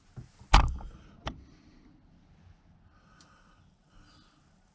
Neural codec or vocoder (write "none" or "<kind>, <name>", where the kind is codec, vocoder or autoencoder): none